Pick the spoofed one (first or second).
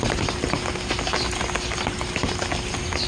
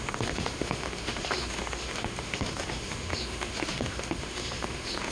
second